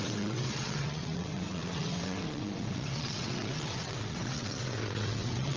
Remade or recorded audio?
remade